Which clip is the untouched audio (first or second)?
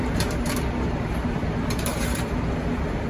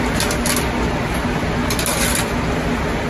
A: second